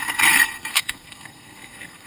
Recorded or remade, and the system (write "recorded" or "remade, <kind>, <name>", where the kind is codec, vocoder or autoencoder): remade, codec, SNAC